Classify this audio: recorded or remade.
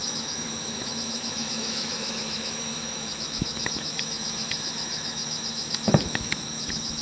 remade